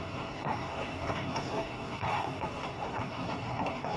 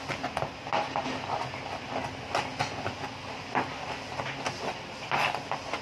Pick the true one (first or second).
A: second